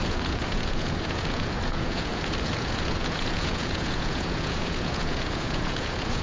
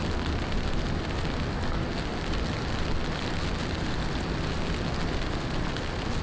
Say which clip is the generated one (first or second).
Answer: first